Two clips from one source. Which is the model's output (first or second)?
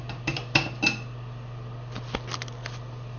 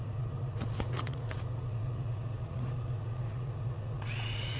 second